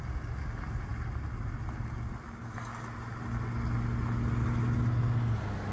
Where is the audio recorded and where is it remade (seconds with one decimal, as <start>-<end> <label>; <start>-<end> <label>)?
0.0-5.7 recorded